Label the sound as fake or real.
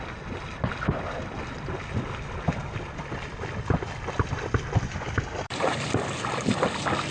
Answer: real